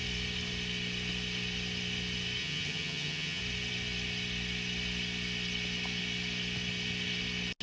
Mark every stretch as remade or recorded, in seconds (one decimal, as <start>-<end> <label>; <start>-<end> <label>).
0.0-2.4 recorded; 2.4-3.4 remade; 3.4-7.6 recorded

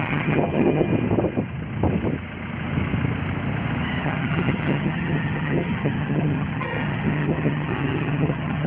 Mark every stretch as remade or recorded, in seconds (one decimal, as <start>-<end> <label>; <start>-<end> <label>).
0.0-0.9 remade; 0.9-4.0 recorded; 4.0-8.7 remade

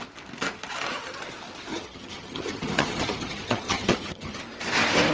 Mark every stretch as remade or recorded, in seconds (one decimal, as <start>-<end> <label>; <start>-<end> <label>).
0.0-1.7 recorded; 1.7-4.4 remade; 4.4-5.1 recorded